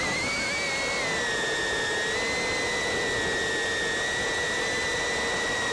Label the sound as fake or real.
real